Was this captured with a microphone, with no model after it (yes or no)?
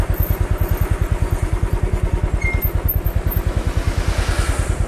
yes